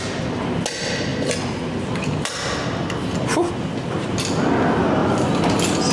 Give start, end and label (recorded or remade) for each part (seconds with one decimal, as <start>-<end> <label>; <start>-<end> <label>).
0.0-5.9 recorded